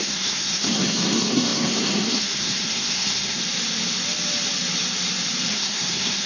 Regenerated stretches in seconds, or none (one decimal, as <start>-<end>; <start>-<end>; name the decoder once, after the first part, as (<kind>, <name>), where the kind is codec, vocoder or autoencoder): 0.0-3.4 (codec, SNAC); 5.5-6.3